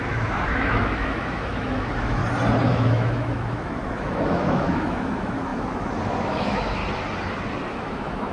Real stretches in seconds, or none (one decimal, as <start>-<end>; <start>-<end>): 2.2-2.7; 6.8-7.7